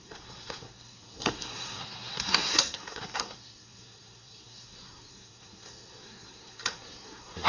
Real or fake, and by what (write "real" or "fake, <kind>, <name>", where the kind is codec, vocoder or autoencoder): fake, codec, SNAC